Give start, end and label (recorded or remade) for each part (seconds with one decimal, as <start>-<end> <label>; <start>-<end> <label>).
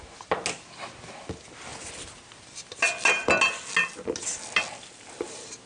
0.0-5.7 recorded